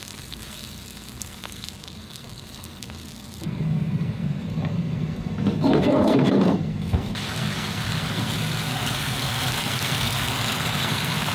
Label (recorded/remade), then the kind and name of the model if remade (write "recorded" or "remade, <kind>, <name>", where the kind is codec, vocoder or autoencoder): remade, codec, SNAC